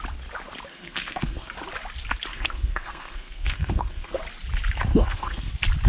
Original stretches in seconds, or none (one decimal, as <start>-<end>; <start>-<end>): 0.0-0.7; 1.5-2.3; 4.2-4.9; 5.5-5.9